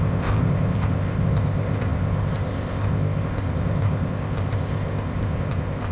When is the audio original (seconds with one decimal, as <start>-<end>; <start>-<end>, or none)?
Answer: none